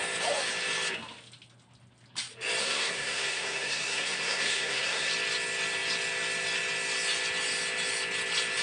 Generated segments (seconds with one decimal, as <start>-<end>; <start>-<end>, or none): 2.6-5.1

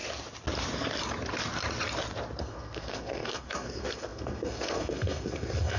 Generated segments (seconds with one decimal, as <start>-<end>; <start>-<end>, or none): 2.4-5.8

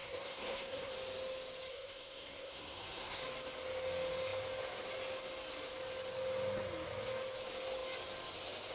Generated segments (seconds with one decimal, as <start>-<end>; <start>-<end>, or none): 0.0-0.9; 1.7-3.2

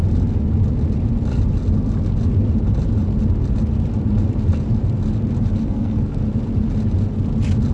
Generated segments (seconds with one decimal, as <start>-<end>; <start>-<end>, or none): 5.6-6.2

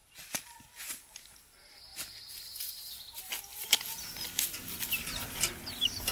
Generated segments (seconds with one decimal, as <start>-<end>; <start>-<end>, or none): none

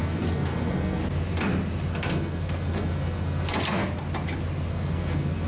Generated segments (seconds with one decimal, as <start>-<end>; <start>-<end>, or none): 0.0-1.0; 1.9-3.8; 4.7-5.5